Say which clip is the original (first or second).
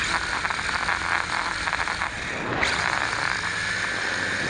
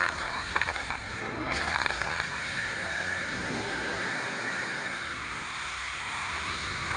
first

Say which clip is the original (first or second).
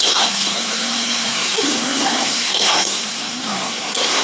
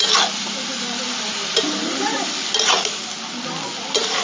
second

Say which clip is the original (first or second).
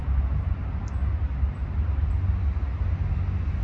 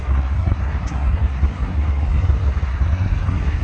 first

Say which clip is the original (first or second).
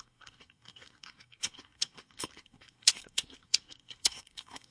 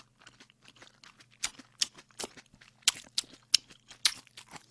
second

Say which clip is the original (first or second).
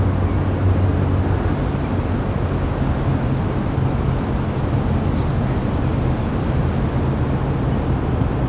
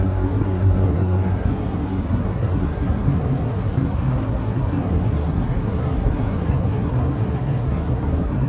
first